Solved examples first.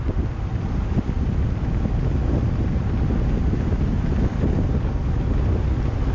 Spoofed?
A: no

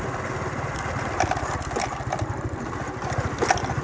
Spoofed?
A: no